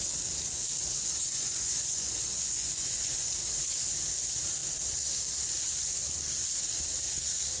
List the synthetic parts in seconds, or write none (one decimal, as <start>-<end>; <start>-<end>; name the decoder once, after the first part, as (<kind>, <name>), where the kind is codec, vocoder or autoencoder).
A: 1.2-3.3 (vocoder, Vocos)